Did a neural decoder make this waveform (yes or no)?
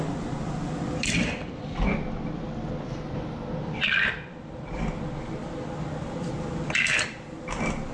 no